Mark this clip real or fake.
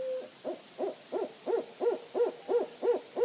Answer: real